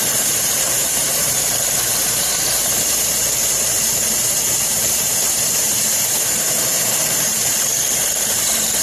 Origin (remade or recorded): remade